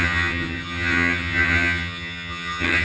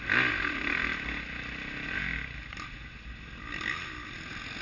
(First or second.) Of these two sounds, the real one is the second